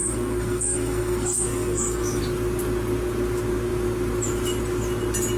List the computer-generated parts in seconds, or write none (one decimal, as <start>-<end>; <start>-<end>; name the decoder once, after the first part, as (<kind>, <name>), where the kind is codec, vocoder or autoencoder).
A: 0.0-2.2 (codec, SNAC)